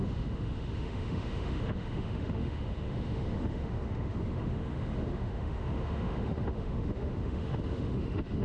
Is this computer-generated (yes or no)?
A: yes